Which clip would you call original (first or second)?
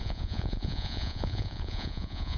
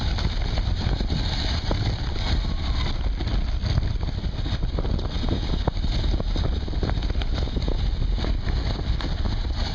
second